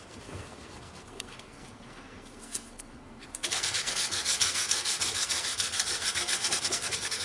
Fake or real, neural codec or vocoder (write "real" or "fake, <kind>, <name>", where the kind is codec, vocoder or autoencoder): fake, codec, SNAC